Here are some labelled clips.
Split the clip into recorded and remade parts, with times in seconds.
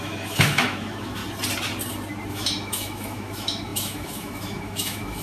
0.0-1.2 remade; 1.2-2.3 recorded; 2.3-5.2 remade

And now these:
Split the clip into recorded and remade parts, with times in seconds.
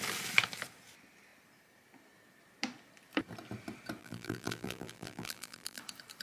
0.0-4.0 recorded; 4.0-5.8 remade; 5.8-6.2 recorded